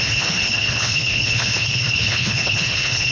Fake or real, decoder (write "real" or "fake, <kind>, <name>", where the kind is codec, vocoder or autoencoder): fake, codec, HILCodec